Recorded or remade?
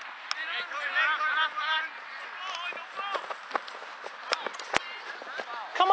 recorded